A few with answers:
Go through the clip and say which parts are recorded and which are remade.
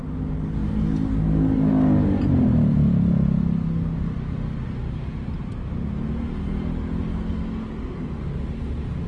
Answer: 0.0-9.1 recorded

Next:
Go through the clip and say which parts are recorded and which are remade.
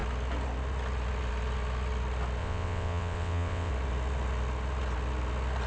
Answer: 0.0-2.4 recorded; 2.4-3.7 remade; 3.7-5.7 recorded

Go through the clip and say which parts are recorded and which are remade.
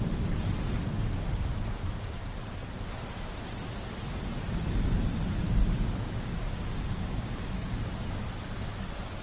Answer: 0.0-5.6 recorded; 5.6-7.9 remade; 7.9-9.2 recorded